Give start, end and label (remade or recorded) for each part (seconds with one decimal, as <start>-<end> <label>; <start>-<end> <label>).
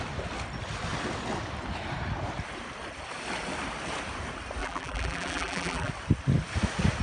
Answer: 0.0-4.6 recorded; 4.6-5.9 remade; 5.9-7.0 recorded